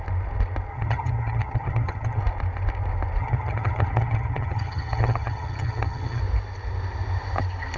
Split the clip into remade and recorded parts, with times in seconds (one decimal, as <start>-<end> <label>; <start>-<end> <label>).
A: 0.0-0.7 recorded; 0.7-2.2 remade; 2.2-3.2 recorded; 3.2-6.2 remade; 6.2-7.8 recorded